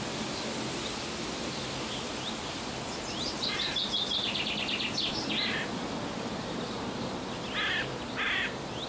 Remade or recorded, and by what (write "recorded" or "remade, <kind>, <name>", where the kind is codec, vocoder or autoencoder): recorded